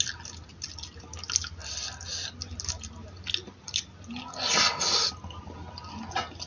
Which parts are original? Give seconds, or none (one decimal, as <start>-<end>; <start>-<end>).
0.0-6.5